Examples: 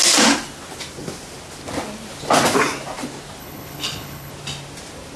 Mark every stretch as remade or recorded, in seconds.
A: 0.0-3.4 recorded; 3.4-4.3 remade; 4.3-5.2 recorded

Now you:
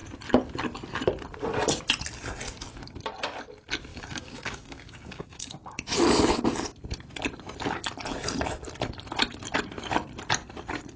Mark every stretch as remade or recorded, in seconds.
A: 0.0-3.9 recorded; 3.9-5.8 remade; 5.8-11.0 recorded

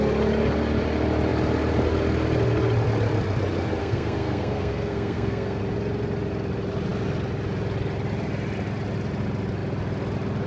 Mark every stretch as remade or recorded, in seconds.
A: 0.0-3.8 recorded; 3.8-5.6 remade; 5.6-10.5 recorded

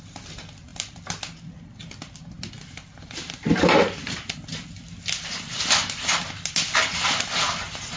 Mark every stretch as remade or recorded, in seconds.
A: 0.0-8.0 recorded